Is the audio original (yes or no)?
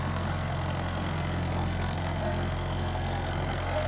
no